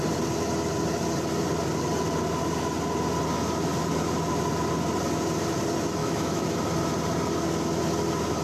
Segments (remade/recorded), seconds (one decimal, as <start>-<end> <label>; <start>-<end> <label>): 0.0-6.0 recorded; 6.0-6.6 remade; 6.6-8.4 recorded